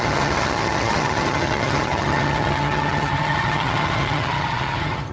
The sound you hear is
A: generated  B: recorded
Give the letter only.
A